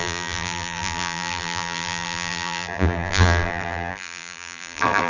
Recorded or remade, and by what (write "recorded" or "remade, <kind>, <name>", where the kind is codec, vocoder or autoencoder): remade, vocoder, BigVGAN v2